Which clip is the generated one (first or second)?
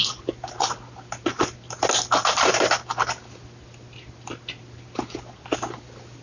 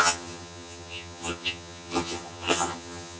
second